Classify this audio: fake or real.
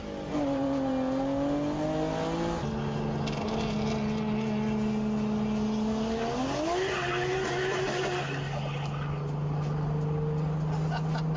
real